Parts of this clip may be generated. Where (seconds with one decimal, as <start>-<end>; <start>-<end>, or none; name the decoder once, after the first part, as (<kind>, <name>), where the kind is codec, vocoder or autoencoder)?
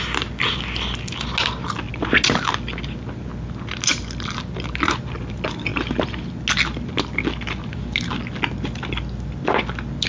none